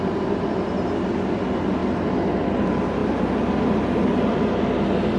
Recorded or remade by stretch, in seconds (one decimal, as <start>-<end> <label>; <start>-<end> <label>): 0.0-3.0 recorded; 3.0-4.6 remade; 4.6-5.2 recorded